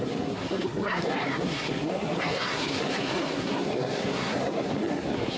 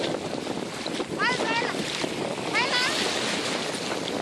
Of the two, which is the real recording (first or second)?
second